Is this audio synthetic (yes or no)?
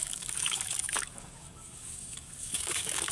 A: yes